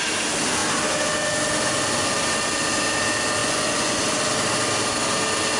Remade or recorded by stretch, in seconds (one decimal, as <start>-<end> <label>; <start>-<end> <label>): 0.0-3.4 recorded; 3.4-4.0 remade; 4.0-5.6 recorded